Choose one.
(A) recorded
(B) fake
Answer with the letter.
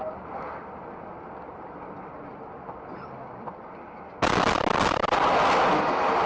A